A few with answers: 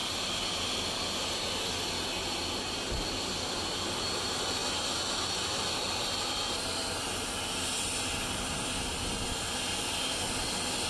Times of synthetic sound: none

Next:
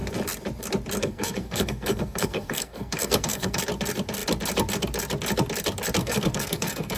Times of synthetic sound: 1.0-3.6; 6.0-7.0

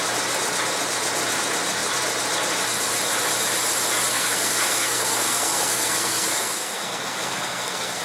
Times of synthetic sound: 4.1-8.0

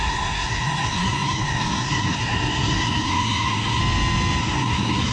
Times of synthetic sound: 0.0-3.8; 4.4-5.1

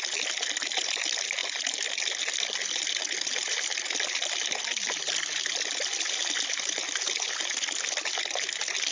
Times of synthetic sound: none

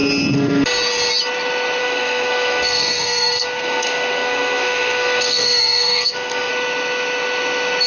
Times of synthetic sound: 1.8-6.5

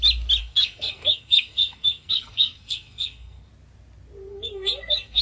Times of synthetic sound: 0.4-3.5; 4.3-5.2